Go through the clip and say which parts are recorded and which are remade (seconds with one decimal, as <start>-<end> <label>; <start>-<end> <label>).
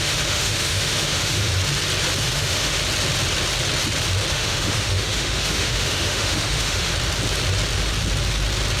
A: 0.0-1.5 remade; 1.5-2.2 recorded; 2.2-2.8 remade; 2.8-4.3 recorded; 4.3-6.9 remade; 6.9-8.8 recorded